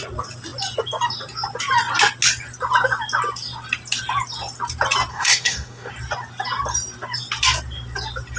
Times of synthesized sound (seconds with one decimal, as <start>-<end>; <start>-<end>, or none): 5.1-5.9

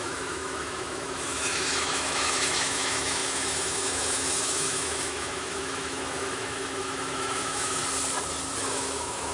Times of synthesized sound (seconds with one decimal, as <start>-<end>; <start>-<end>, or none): 0.0-7.8; 8.6-9.3

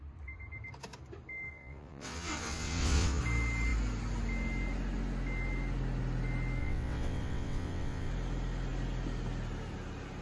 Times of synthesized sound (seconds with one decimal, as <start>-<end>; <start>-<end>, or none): 1.5-3.2; 6.6-8.1

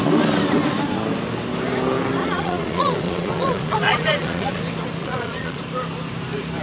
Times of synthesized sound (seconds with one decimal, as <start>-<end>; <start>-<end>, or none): 2.2-4.6; 5.0-5.6

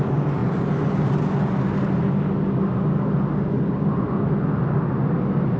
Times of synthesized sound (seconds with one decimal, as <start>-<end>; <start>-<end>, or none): none

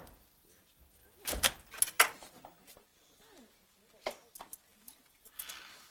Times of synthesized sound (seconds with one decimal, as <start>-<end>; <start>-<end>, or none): 1.0-1.8; 4.7-5.5

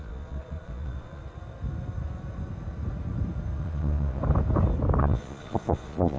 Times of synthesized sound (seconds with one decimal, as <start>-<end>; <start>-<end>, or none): 0.0-1.2; 3.6-4.2; 5.0-6.2